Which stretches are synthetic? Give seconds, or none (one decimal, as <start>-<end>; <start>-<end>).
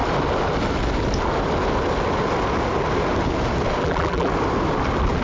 3.8-4.3